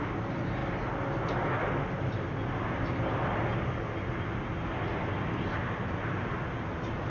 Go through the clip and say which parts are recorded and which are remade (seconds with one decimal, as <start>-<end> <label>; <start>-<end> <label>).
0.0-7.1 recorded